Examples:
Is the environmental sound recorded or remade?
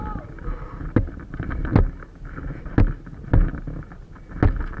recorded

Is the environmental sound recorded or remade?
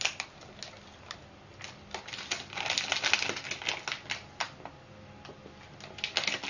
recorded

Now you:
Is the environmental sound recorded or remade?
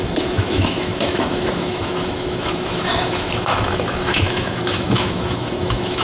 remade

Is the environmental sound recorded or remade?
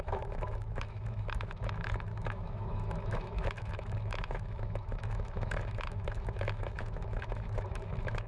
remade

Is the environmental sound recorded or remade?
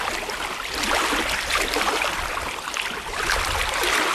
recorded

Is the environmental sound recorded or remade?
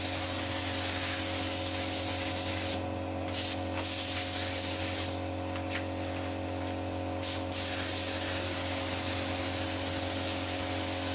recorded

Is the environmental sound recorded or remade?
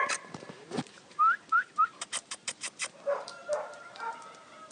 remade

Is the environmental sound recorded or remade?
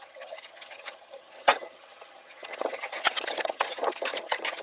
remade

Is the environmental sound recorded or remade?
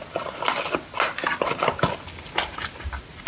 recorded